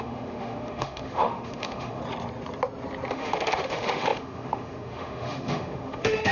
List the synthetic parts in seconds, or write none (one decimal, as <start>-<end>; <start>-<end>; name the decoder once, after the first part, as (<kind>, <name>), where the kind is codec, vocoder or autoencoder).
0.0-2.0 (autoencoder, DAC-VAE); 3.1-6.3